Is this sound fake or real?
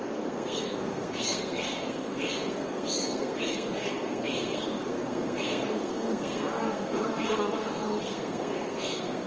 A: fake